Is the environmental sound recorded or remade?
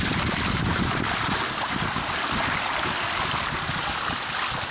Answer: recorded